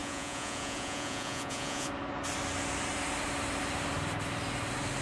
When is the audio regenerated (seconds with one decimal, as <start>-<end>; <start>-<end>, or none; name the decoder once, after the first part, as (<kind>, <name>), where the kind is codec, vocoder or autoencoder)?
0.0-1.9 (vocoder, Vocos)